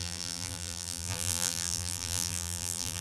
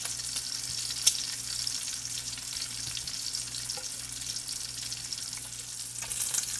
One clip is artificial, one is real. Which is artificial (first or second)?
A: first